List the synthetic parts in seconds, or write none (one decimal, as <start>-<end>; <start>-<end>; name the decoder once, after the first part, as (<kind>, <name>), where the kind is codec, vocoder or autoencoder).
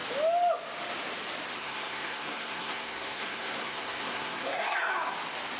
1.6-4.9 (codec, SNAC)